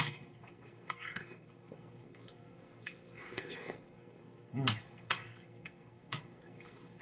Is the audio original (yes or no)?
no